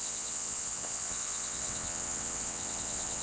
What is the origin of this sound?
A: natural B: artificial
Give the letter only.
B